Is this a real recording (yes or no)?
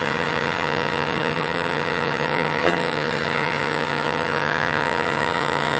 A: no